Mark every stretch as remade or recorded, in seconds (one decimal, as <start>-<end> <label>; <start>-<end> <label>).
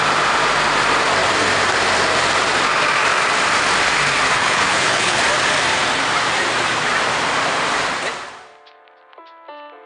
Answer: 0.0-4.4 recorded; 4.4-5.2 remade; 5.2-9.9 recorded